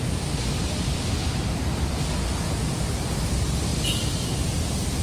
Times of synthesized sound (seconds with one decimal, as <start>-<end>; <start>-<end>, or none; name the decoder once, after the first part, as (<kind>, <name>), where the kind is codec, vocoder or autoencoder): none

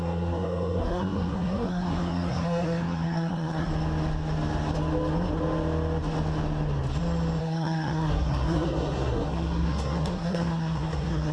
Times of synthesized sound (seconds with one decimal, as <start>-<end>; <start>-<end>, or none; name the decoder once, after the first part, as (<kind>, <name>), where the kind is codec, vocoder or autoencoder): 0.0-3.7 (codec, SNAC); 7.4-11.3

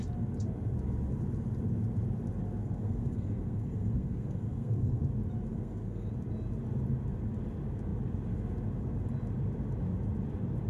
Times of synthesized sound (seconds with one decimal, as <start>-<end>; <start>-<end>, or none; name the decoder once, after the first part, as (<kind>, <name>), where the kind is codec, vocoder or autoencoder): 2.6-5.0 (codec, SNAC); 5.5-6.1

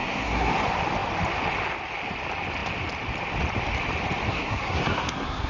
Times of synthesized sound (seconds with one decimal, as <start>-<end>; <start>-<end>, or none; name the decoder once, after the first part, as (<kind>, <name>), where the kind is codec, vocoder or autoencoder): 0.0-0.5 (codec, SNAC); 4.3-5.5

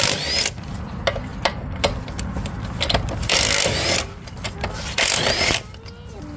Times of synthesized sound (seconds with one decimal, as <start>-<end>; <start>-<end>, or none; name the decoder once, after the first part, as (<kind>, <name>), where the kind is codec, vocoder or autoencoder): 1.3-2.4 (vocoder, BigVGAN v2)

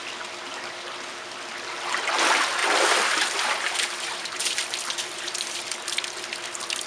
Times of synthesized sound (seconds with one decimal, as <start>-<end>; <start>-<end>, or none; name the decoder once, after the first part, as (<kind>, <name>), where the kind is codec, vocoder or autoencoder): 2.6-6.9 (vocoder, BigVGAN v2)

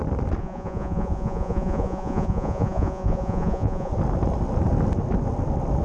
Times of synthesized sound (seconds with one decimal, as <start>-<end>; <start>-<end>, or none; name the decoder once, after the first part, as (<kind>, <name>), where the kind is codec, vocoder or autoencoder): 0.4-3.9 (vocoder, Vocos)